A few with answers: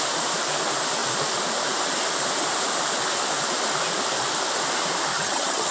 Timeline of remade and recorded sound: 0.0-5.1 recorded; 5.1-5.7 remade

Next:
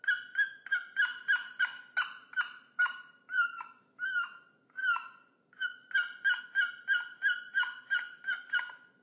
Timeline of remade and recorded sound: 0.0-1.1 recorded; 1.1-1.7 remade; 1.7-2.2 recorded; 2.2-3.8 remade; 3.8-9.0 recorded

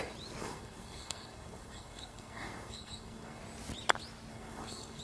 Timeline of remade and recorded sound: 0.0-0.4 recorded; 0.4-3.4 remade; 3.4-4.3 recorded; 4.3-5.0 remade

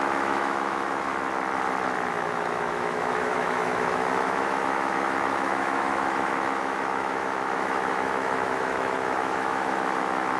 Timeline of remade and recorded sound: 0.0-1.1 remade; 1.1-2.1 recorded; 2.1-10.4 remade

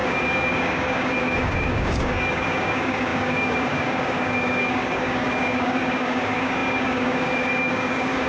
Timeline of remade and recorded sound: 0.0-8.3 remade